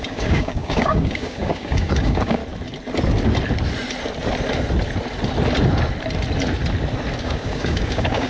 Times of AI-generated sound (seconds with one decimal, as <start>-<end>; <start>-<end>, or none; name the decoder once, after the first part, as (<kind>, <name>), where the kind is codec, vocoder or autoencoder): 0.0-2.4 (codec, DAC); 7.2-8.3